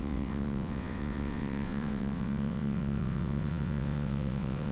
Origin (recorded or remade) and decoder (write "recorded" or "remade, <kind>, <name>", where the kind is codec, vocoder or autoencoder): remade, vocoder, WaveNeXt